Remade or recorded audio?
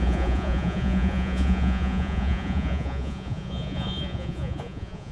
remade